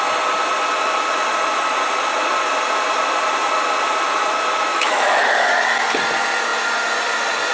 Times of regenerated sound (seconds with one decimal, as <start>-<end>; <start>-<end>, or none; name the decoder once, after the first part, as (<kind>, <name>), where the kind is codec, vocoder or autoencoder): 4.7-5.5 (autoencoder, DAC-VAE)